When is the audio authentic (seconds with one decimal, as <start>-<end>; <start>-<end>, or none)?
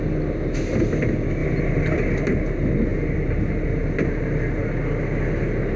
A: 0.0-5.8